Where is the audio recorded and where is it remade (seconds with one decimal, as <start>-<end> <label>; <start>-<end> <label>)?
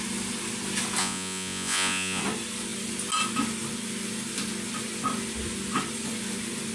0.0-1.0 recorded; 1.0-2.2 remade; 2.2-6.7 recorded